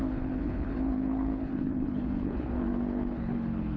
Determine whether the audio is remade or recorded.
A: remade